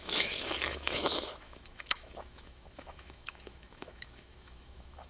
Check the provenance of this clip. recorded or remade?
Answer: remade